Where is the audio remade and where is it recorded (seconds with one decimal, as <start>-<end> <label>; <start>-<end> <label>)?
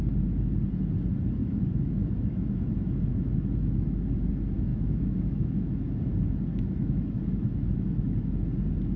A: 0.0-1.4 recorded; 1.4-4.1 remade; 4.1-4.7 recorded; 4.7-6.0 remade; 6.0-6.5 recorded; 6.5-8.0 remade; 8.0-9.0 recorded